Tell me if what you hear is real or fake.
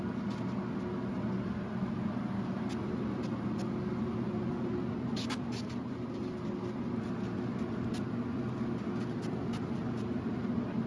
real